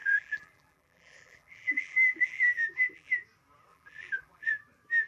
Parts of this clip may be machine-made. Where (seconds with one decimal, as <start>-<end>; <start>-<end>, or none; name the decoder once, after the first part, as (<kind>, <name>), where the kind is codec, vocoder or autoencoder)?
0.0-3.1 (vocoder, BigVGAN v2); 3.7-4.5